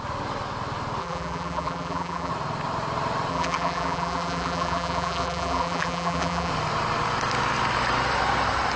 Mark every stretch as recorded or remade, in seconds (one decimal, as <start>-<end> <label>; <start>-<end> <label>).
0.0-1.0 recorded; 1.0-2.3 remade; 2.3-3.3 recorded; 3.3-6.5 remade; 6.5-8.8 recorded